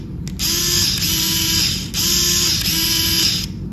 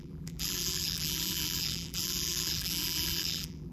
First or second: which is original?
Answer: first